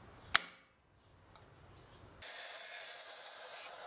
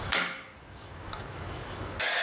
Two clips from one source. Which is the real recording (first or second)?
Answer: first